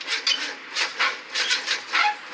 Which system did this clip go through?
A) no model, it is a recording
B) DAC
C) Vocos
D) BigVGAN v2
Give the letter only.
A